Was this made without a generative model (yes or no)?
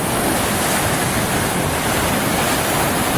yes